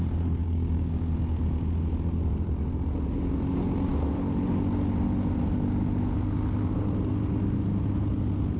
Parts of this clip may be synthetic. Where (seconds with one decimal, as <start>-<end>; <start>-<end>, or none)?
0.4-1.1